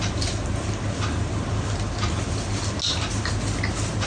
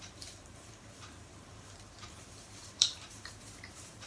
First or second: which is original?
first